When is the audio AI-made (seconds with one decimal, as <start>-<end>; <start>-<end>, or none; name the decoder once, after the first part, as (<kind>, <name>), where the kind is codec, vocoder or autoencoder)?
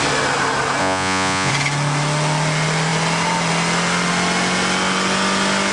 0.8-1.5 (vocoder, Vocos)